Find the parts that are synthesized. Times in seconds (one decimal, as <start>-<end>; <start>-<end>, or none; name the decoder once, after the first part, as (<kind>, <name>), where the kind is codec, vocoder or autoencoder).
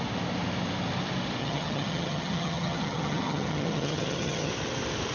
1.4-4.5 (vocoder, HiFi-GAN)